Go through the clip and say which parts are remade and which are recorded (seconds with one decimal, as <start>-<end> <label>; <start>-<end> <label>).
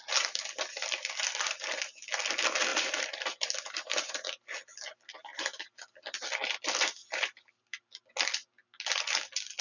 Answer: 0.0-2.7 recorded; 2.7-4.1 remade; 4.1-5.3 recorded; 5.3-5.8 remade; 5.8-7.0 recorded; 7.0-8.1 remade; 8.1-9.6 recorded